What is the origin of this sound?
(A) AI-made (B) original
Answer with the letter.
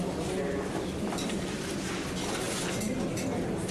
B